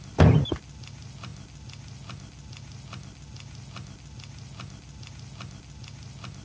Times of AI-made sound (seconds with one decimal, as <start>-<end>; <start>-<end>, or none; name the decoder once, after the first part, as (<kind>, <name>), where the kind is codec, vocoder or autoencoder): none